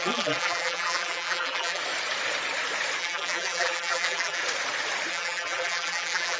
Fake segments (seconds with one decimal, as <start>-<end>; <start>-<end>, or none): 0.0-1.8; 3.0-4.4; 5.1-6.4